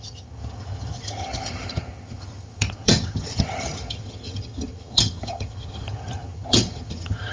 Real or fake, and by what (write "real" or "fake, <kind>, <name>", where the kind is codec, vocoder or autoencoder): fake, vocoder, HiFi-GAN